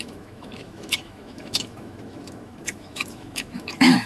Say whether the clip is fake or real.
fake